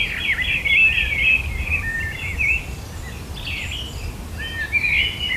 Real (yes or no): yes